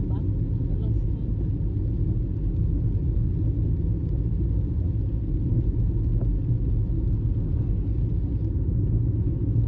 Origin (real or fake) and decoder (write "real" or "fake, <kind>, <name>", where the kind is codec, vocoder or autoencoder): real